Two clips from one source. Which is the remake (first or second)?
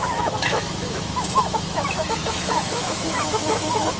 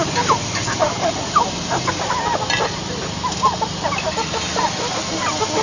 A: first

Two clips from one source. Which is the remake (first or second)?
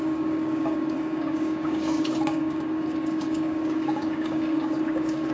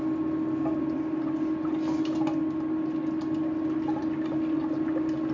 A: first